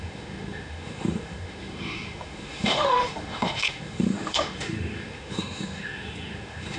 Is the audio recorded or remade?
remade